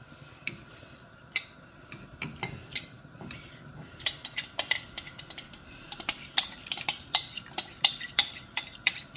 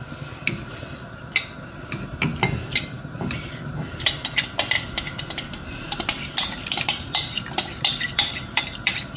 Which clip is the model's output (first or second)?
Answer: first